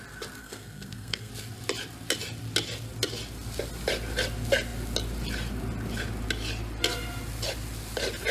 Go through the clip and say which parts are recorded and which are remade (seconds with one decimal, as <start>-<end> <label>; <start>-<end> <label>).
0.0-0.4 recorded; 0.4-1.3 remade; 1.3-8.3 recorded